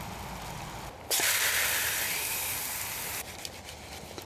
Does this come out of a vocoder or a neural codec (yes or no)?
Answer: no